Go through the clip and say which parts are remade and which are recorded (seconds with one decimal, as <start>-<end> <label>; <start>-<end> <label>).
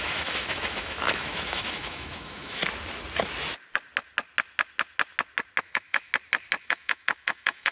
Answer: 0.0-2.6 remade; 2.6-5.6 recorded; 5.6-6.1 remade; 6.1-6.6 recorded; 6.6-7.7 remade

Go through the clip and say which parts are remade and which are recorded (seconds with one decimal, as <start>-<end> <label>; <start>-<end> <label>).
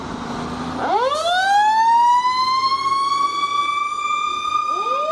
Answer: 0.0-5.1 recorded